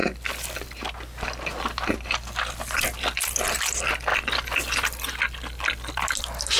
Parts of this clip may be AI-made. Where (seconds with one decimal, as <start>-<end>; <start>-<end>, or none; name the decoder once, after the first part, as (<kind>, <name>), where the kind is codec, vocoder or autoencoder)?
none